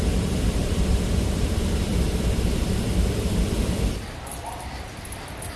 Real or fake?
fake